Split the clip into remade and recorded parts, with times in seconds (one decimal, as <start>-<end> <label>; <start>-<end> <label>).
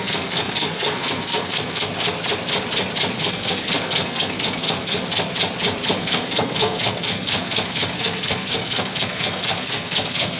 0.0-1.9 remade; 1.9-3.2 recorded; 3.2-5.0 remade; 5.0-5.9 recorded; 5.9-10.4 remade